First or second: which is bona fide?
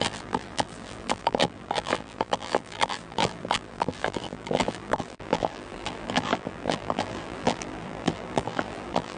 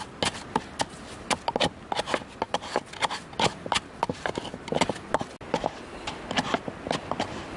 second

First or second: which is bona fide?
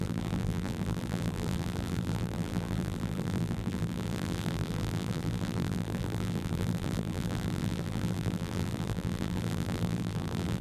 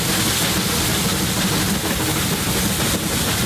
second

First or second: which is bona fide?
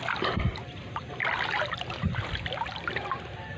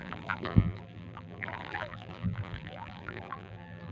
first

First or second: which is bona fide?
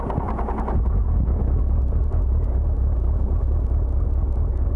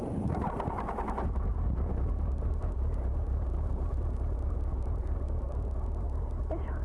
first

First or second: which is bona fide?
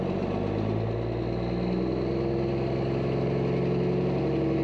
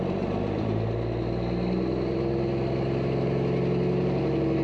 first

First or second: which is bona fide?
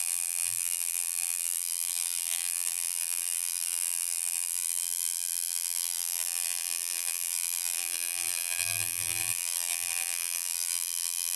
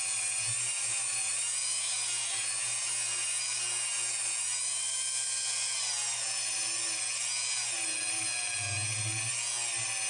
second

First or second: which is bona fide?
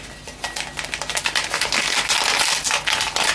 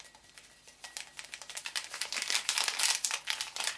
first